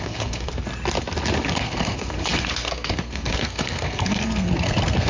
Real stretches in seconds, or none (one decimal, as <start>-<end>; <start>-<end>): 0.5-1.5